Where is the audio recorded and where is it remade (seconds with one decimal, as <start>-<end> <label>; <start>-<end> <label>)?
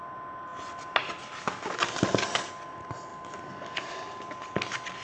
0.0-5.0 recorded